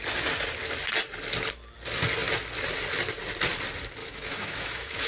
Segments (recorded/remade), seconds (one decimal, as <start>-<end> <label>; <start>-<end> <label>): 0.0-4.0 recorded; 4.0-5.1 remade